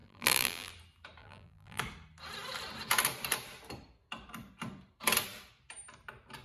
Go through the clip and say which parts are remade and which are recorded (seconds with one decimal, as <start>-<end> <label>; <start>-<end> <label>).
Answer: 0.0-0.7 remade; 0.7-1.2 recorded; 1.2-1.8 remade; 1.8-6.4 recorded